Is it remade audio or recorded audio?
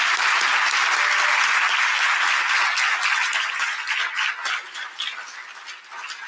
recorded